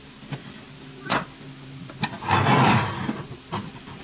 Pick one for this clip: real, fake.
real